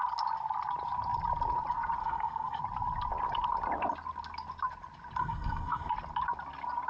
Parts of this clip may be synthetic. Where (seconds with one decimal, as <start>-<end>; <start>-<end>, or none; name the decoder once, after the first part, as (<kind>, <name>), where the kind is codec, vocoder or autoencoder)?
2.0-2.6 (codec, SNAC); 5.2-5.9